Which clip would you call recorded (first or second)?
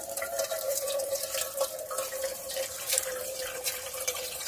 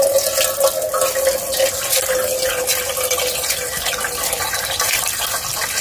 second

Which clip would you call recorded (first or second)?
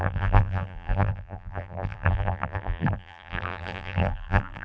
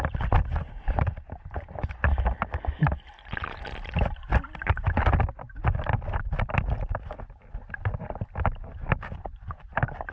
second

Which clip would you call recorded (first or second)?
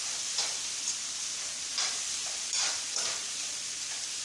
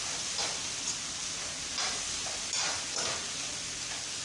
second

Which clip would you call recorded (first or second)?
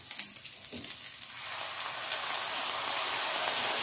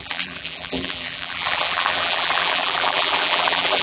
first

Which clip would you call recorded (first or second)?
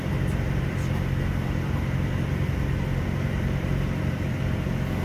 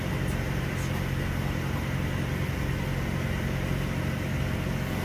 second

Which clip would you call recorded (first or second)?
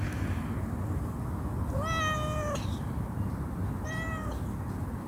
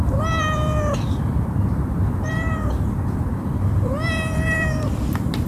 first